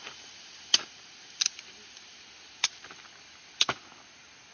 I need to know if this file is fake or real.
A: real